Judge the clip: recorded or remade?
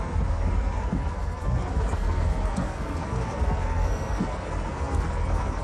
remade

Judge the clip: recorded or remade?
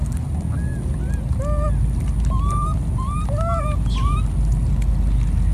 recorded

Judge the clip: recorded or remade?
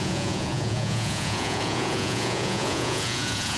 remade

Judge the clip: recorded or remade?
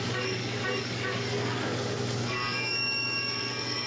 remade